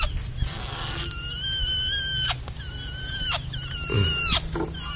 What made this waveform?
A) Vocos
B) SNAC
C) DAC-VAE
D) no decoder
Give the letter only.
D